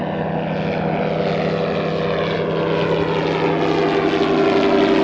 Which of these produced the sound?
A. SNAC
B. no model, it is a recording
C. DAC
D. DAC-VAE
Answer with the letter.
B